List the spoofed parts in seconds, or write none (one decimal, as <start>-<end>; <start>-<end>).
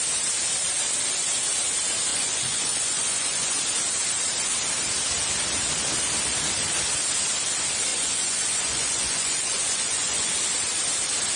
2.1-3.6; 7.9-10.3